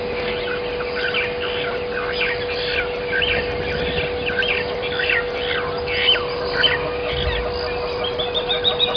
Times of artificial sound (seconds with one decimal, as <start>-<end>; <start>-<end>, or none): none